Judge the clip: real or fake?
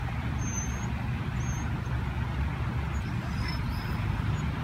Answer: real